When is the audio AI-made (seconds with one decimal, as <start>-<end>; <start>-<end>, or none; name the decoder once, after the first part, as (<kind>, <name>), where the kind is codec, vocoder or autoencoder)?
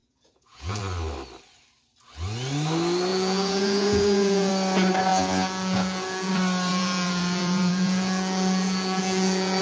0.0-0.8 (vocoder, Vocos); 3.1-4.5; 5.1-6.3; 6.7-9.6